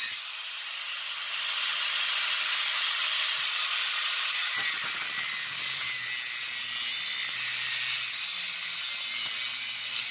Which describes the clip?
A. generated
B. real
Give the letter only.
B